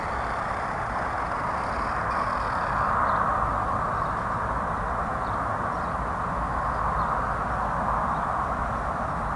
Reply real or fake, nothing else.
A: real